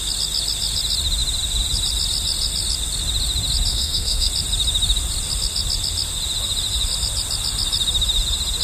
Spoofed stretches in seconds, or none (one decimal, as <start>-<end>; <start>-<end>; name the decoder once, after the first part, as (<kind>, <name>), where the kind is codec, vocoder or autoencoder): 3.7-4.3 (codec, SNAC)